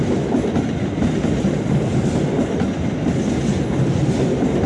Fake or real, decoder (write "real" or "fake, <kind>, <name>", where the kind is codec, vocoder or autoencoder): real